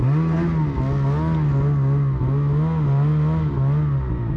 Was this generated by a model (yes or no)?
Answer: no